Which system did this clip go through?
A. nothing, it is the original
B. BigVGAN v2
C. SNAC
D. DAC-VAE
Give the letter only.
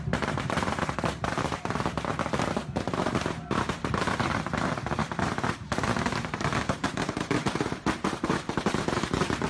B